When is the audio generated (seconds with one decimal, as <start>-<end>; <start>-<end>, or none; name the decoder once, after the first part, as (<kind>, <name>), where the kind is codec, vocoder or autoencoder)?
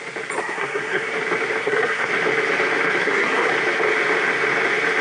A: 0.4-1.1 (codec, SNAC); 1.6-2.1; 3.0-3.5